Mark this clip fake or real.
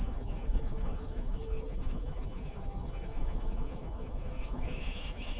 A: fake